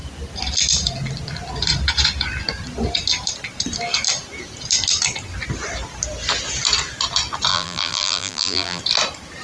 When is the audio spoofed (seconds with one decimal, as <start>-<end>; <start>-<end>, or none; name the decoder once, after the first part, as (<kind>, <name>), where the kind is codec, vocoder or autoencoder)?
7.5-8.8 (vocoder, BigVGAN v2)